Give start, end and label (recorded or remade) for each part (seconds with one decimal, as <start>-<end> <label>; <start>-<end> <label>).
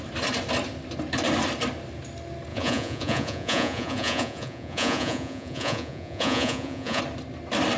0.0-2.5 recorded; 2.5-7.0 remade; 7.0-7.8 recorded